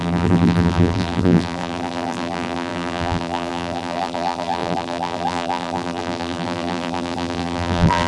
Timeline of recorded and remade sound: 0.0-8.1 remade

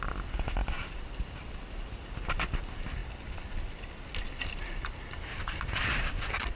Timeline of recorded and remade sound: 0.0-6.6 recorded

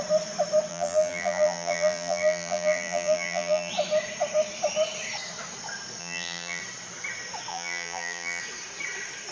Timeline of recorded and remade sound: 0.0-0.7 recorded; 0.7-3.7 remade; 3.7-6.0 recorded; 6.0-6.6 remade; 6.6-7.5 recorded; 7.5-8.4 remade; 8.4-9.3 recorded

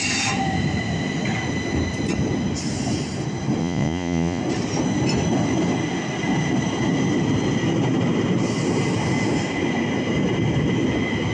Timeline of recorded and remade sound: 0.0-3.6 recorded; 3.6-4.4 remade; 4.4-11.3 recorded

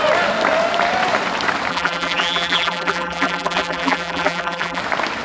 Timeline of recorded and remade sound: 0.0-1.7 recorded; 1.7-4.8 remade; 4.8-5.2 recorded

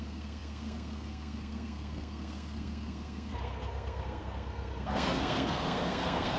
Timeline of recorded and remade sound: 0.0-6.4 remade

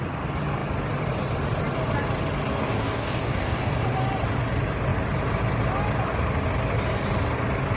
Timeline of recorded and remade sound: 0.0-2.5 recorded; 2.5-3.7 remade; 3.7-7.8 recorded